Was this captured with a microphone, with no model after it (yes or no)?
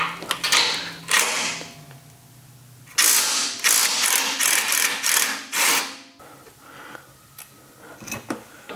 yes